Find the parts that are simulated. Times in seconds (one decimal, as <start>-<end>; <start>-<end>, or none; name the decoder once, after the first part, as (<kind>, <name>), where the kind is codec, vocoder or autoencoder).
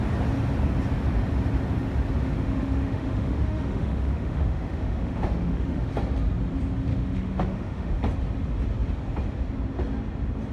2.2-5.9 (autoencoder, DAC-VAE); 6.9-7.9